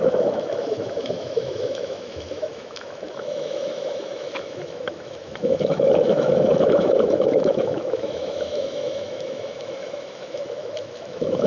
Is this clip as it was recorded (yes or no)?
no